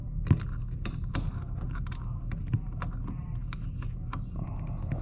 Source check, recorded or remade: recorded